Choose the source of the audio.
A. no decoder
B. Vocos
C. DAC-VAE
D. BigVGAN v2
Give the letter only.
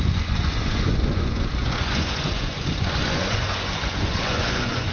B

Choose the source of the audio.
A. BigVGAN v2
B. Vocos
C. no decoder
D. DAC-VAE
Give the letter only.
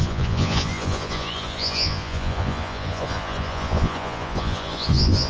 B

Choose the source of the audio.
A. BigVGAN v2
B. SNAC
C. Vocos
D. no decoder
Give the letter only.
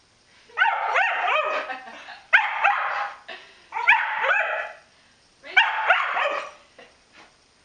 D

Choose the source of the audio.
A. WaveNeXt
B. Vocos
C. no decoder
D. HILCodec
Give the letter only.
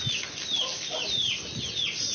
C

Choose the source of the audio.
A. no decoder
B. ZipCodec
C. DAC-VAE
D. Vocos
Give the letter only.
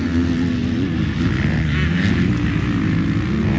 A